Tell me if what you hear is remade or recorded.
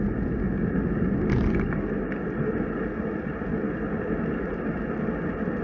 recorded